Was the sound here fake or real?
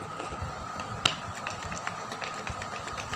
real